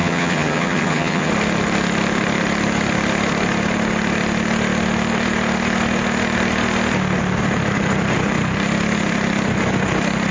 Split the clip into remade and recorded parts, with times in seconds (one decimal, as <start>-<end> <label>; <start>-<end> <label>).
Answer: 0.0-1.3 remade; 1.3-10.3 recorded